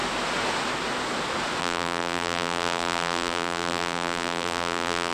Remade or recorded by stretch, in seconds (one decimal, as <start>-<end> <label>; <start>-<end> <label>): 0.0-1.6 recorded; 1.6-5.1 remade